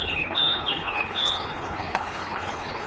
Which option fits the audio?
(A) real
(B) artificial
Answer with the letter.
B